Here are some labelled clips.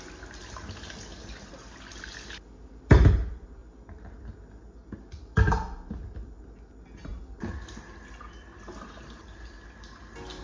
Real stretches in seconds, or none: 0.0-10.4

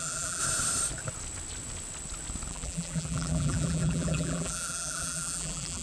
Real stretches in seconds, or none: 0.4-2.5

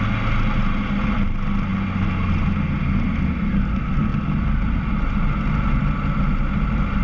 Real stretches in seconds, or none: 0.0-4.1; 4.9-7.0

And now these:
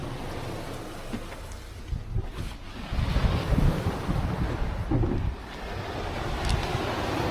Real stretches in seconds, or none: 0.0-7.3

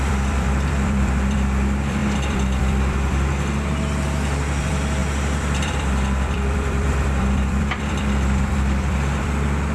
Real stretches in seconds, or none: 3.3-4.6

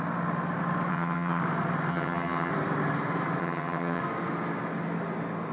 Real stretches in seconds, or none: 0.0-0.9; 1.4-1.9; 2.5-3.4; 4.0-5.5

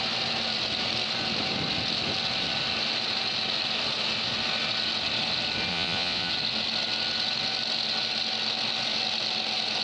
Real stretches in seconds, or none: 0.0-5.7; 6.3-9.8